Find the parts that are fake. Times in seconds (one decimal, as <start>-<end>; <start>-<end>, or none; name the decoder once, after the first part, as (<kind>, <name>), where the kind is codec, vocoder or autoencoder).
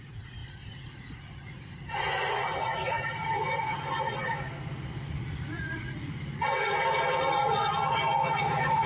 0.0-8.9 (vocoder, Vocos)